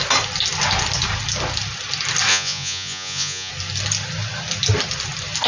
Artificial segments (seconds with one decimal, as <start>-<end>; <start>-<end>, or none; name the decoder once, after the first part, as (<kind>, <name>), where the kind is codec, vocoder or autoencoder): 2.3-3.5 (vocoder, Vocos)